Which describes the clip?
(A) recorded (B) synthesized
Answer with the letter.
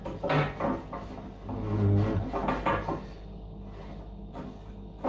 A